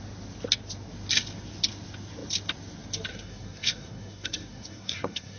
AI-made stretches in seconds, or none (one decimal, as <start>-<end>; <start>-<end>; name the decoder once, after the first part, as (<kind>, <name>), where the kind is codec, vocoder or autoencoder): 3.1-5.4 (codec, SNAC)